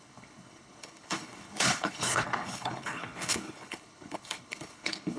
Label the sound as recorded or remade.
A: remade